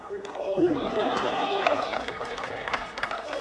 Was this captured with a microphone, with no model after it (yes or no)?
no